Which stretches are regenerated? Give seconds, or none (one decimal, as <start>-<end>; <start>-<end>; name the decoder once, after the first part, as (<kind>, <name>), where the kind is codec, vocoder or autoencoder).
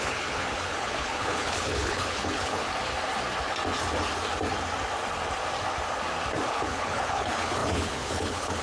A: 0.0-2.7 (codec, HILCodec); 6.5-8.6